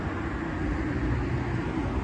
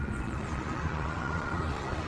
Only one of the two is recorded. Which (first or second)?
first